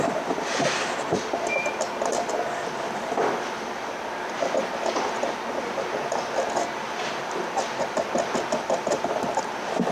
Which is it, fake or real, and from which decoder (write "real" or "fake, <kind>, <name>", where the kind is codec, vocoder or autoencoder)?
fake, vocoder, BigVGAN v2